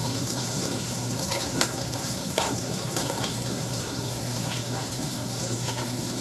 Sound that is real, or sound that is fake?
fake